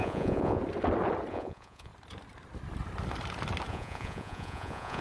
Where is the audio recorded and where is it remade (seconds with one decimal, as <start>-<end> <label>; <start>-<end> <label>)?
0.0-0.6 remade; 0.6-1.3 recorded; 1.3-1.9 remade; 1.9-3.7 recorded; 3.7-5.0 remade